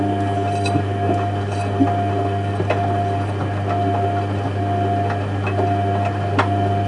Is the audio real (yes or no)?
yes